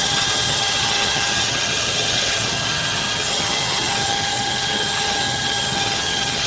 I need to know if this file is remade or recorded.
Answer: remade